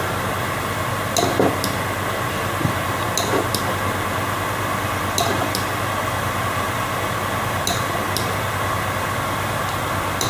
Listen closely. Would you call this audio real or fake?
real